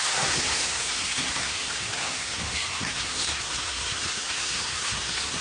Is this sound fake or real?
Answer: fake